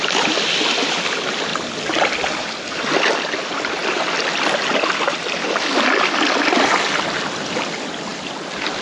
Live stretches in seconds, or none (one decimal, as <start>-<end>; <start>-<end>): 0.0-8.8